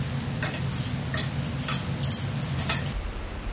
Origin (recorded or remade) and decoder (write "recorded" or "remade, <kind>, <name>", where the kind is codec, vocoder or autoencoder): recorded